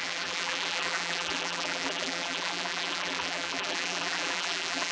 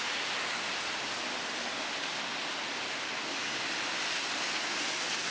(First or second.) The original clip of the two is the second